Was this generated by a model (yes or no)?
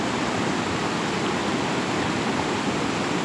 yes